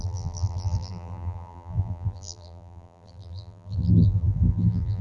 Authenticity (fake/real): fake